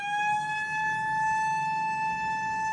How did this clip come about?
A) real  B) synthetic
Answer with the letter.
B